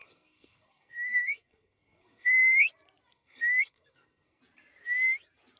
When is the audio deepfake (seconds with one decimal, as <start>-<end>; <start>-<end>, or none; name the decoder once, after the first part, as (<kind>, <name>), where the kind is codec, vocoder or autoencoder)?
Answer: 0.0-2.7 (codec, SNAC); 3.1-4.4